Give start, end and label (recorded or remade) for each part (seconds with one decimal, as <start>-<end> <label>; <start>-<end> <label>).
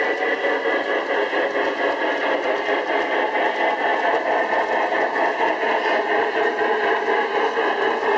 0.0-8.2 recorded